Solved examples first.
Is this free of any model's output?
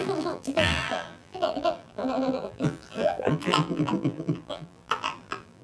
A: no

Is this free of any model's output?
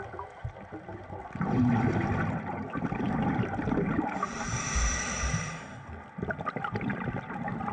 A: yes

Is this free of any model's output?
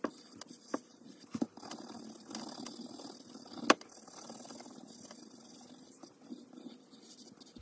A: yes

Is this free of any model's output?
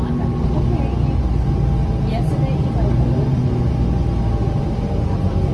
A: yes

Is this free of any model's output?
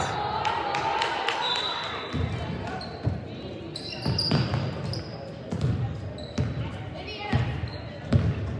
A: yes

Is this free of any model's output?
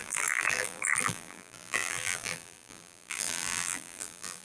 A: no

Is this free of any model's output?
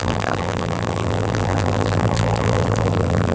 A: no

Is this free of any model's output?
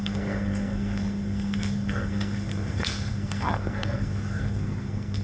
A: no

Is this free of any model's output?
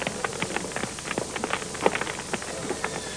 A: yes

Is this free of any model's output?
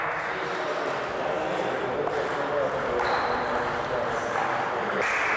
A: yes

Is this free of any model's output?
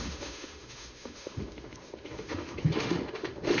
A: no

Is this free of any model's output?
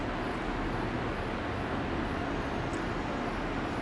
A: yes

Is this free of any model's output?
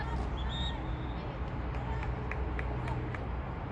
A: yes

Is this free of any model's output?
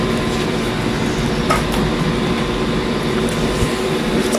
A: yes